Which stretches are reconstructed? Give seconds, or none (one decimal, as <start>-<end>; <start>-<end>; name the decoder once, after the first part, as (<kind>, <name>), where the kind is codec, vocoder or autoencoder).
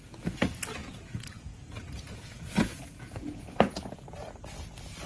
0.8-3.9 (vocoder, Vocos)